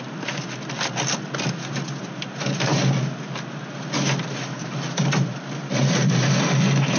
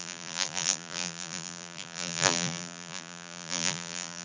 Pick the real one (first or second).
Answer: first